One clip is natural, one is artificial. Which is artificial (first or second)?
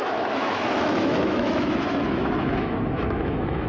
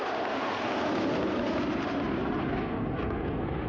first